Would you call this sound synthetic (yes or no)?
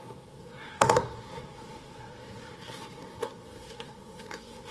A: yes